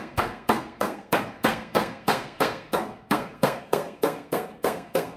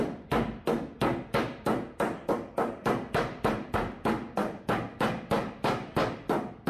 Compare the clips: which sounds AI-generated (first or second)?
first